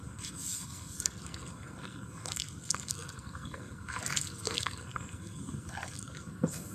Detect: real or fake fake